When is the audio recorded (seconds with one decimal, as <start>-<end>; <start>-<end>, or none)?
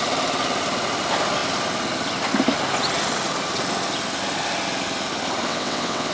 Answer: 0.0-5.5